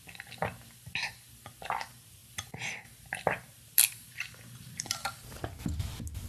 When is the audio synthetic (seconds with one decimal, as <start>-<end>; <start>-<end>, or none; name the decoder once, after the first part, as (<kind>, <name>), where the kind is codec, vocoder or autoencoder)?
none